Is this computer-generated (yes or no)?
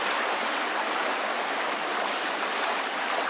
no